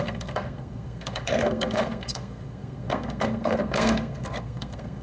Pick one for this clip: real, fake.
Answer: fake